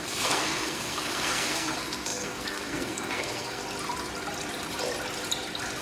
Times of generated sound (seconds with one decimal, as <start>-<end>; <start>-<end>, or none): 0.0-3.6